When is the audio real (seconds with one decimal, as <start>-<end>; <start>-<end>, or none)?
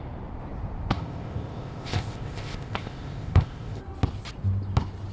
0.0-0.9; 3.8-5.1